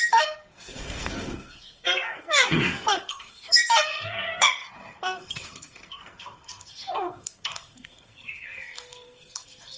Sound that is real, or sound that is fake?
fake